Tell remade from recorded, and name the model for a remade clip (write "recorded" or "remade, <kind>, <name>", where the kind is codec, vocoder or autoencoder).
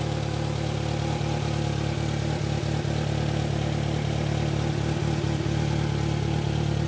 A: recorded